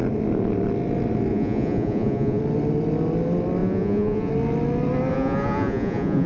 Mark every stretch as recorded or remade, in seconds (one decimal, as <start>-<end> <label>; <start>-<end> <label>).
0.0-1.3 recorded; 1.3-2.4 remade; 2.4-3.6 recorded; 3.6-4.3 remade; 4.3-5.1 recorded; 5.1-6.3 remade